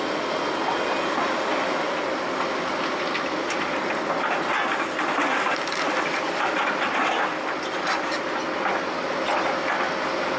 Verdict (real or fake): real